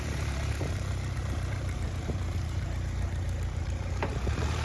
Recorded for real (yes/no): no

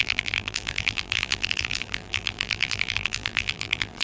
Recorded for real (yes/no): no